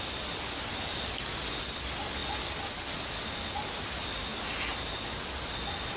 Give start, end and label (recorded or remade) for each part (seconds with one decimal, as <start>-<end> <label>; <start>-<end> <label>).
0.0-6.0 recorded